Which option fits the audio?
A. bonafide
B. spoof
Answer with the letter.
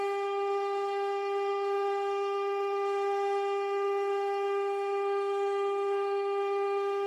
B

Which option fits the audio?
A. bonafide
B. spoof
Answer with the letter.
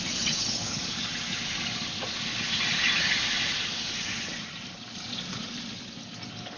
A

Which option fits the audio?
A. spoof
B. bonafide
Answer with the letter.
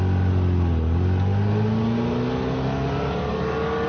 B